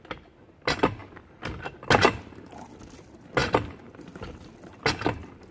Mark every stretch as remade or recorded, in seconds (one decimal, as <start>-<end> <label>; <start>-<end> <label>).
0.0-3.4 recorded; 3.4-4.0 remade; 4.0-5.5 recorded